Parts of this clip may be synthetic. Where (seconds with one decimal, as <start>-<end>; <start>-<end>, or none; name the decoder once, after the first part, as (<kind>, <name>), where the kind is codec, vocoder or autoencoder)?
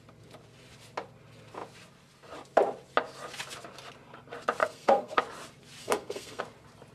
4.6-5.2 (codec, SNAC); 5.8-6.4